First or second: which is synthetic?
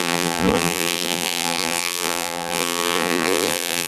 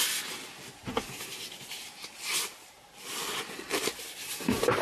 first